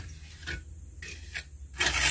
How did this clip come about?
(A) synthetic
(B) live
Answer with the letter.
B